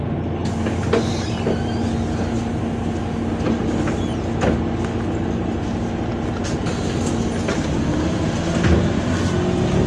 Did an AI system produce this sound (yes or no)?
no